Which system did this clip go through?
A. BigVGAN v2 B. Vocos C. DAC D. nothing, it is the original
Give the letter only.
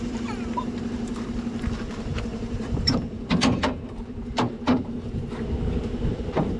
A